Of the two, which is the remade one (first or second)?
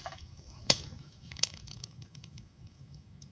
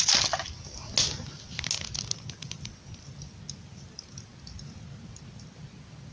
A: first